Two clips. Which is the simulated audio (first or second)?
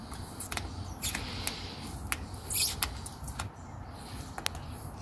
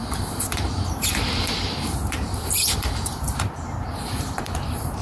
second